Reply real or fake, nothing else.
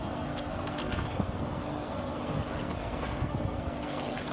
fake